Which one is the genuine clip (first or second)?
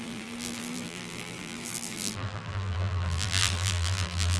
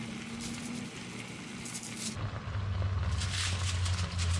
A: second